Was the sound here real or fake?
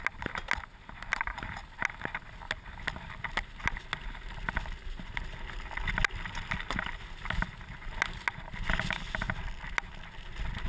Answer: real